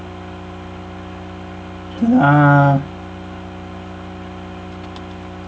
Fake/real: real